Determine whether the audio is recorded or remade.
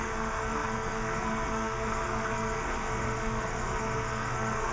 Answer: remade